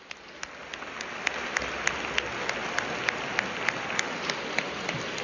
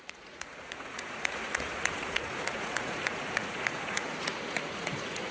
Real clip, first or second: first